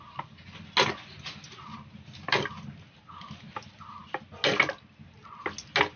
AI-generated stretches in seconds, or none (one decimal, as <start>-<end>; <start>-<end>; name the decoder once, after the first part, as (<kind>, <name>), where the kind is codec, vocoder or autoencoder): none

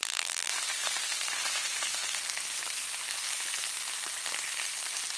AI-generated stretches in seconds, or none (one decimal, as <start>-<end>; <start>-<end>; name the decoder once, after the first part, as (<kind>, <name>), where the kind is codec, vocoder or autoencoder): 0.0-0.5 (vocoder, BigVGAN v2)

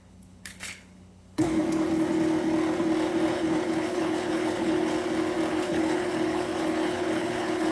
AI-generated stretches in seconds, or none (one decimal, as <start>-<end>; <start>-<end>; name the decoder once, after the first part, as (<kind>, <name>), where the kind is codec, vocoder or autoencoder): 0.0-1.6 (codec, HILCodec); 3.3-4.9; 5.5-7.7

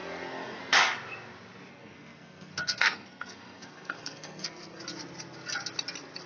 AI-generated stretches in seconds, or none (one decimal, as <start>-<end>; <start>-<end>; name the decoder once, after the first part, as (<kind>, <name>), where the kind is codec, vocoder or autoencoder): 0.0-0.6 (codec, SNAC); 1.7-4.8

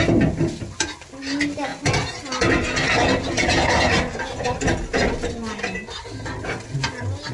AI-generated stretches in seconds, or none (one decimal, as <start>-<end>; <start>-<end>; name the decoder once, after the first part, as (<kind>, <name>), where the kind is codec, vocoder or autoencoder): none

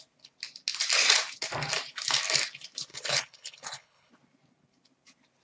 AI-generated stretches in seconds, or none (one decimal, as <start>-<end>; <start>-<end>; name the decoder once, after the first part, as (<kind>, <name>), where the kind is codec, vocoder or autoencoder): 2.9-4.1 (codec, HILCodec)

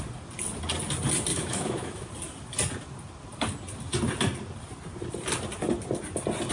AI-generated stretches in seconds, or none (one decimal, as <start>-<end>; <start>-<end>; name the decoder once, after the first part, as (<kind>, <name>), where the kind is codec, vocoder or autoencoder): 1.3-2.1 (autoencoder, DAC-VAE)